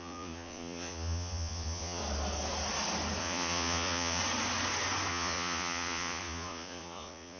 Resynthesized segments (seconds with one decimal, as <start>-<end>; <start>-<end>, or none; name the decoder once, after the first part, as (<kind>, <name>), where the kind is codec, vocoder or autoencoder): 0.0-2.0 (vocoder, Vocos); 3.2-4.2; 5.1-7.4